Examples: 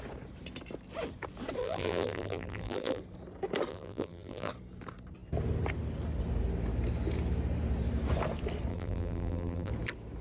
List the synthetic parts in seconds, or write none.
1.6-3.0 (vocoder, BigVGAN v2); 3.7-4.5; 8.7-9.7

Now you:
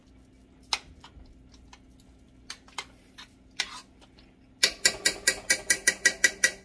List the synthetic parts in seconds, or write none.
none

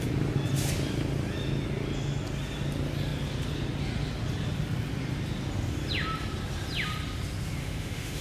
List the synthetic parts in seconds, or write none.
7.6-8.2 (autoencoder, DAC-VAE)